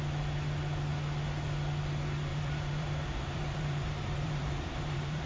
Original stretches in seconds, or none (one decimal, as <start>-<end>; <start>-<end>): 0.0-2.3